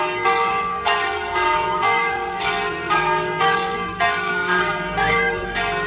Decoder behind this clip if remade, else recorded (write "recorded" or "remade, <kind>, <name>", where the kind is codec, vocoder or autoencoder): remade, codec, SNAC